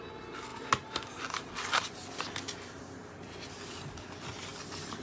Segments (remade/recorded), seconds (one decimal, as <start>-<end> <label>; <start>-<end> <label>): 0.0-5.0 recorded

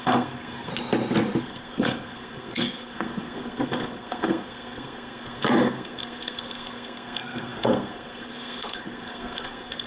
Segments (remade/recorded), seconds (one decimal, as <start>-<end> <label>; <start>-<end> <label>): 0.0-0.7 remade; 0.7-1.4 recorded; 1.4-9.9 remade

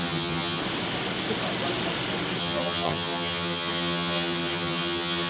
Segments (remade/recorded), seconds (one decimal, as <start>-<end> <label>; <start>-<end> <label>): 0.0-0.6 remade; 0.6-2.4 recorded; 2.4-5.3 remade